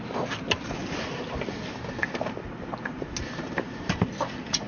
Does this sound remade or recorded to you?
recorded